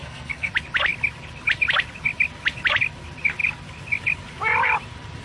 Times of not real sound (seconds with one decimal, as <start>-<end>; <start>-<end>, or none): 0.0-0.5